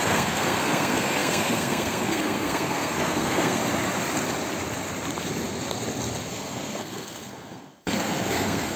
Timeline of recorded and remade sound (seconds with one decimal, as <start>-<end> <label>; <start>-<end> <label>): 0.0-3.6 remade; 3.6-6.3 recorded; 6.3-8.8 remade